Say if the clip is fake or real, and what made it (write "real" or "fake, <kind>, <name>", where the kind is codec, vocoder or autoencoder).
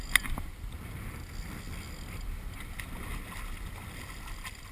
real